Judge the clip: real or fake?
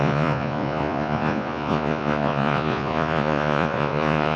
fake